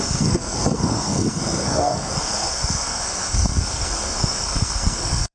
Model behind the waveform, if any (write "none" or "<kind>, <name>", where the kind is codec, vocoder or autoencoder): codec, SNAC